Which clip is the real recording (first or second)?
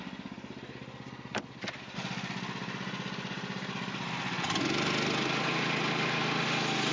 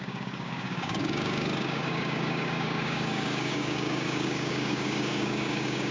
first